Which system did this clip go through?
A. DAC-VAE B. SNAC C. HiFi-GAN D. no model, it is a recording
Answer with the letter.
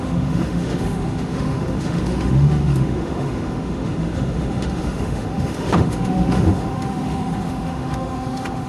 A